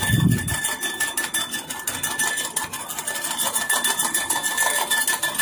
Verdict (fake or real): real